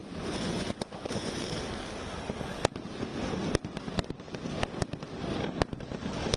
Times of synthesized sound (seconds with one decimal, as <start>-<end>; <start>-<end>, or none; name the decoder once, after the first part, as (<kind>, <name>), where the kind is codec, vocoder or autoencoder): 0.0-1.4 (vocoder, Vocos)